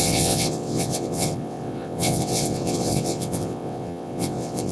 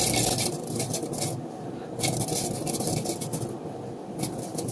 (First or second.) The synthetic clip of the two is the first